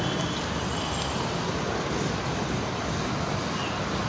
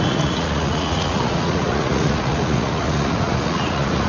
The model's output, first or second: second